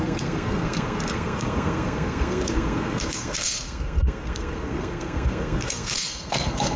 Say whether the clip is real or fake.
fake